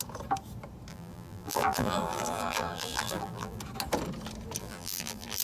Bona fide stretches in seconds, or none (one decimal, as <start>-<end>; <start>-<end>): 0.0-0.9; 3.6-4.6